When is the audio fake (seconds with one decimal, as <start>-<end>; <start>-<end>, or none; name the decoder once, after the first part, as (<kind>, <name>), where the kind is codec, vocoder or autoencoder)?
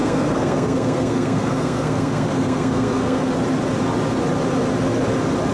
0.0-3.3 (codec, SNAC)